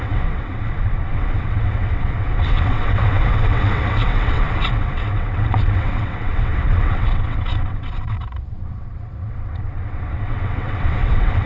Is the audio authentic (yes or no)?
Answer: no